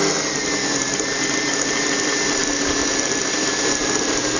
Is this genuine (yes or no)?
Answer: yes